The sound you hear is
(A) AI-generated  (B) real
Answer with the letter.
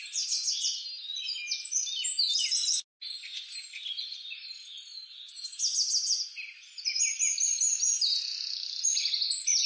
B